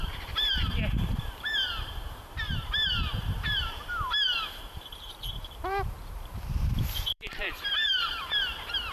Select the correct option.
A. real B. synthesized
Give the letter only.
B